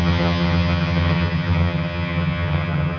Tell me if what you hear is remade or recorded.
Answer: remade